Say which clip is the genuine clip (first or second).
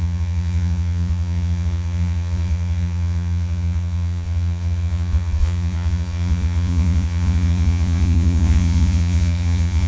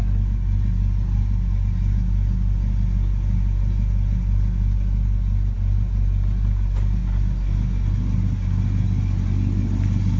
second